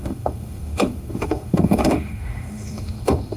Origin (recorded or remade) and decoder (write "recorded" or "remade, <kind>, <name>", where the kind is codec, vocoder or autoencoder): remade, autoencoder, DAC-VAE